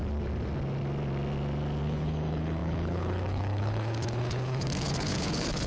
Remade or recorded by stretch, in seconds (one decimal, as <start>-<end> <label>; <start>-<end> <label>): 0.0-1.8 recorded; 1.8-5.7 remade